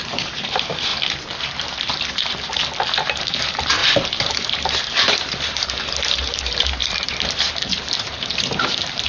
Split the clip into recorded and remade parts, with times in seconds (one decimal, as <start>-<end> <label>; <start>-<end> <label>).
0.0-0.9 remade; 0.9-3.2 recorded; 3.2-9.1 remade